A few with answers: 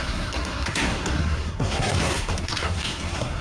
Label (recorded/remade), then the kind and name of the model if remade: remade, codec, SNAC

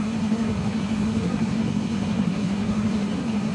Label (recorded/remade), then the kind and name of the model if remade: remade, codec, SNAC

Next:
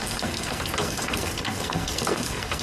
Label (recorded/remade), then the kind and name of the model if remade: remade, codec, SNAC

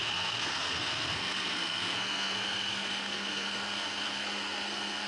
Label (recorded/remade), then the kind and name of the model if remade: remade, codec, SNAC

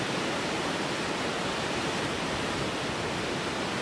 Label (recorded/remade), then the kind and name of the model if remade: recorded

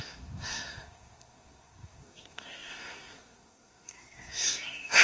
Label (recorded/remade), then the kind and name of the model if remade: remade, codec, SNAC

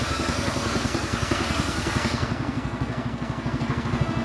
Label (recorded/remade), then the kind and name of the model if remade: remade, codec, SNAC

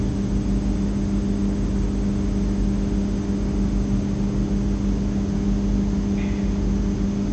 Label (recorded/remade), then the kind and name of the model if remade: recorded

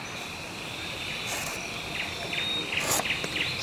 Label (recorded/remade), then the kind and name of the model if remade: recorded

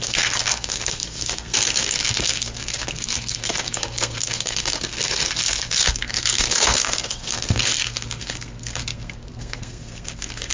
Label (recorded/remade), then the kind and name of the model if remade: remade, codec, SNAC